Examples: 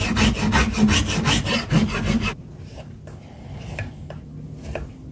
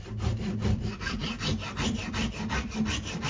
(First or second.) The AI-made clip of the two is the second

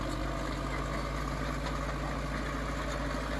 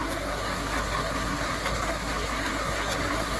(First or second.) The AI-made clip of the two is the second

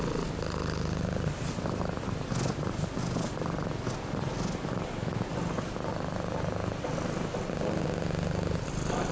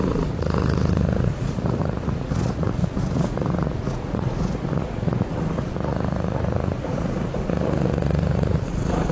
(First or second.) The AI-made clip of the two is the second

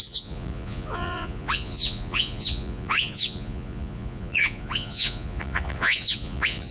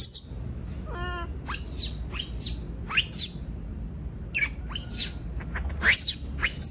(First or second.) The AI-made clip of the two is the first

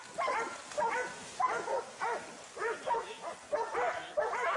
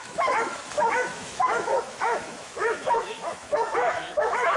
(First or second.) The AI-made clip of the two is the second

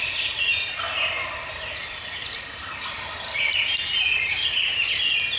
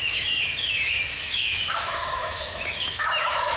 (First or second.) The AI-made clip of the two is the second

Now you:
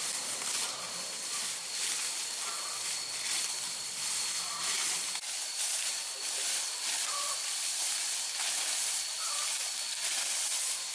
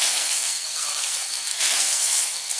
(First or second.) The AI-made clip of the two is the second